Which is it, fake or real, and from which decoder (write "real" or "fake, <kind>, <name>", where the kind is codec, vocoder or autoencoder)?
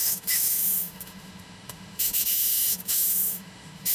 fake, autoencoder, DAC-VAE